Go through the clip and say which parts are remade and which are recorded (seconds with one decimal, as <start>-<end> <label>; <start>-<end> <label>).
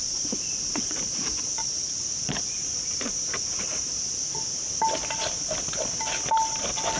0.0-4.2 remade; 4.2-7.0 recorded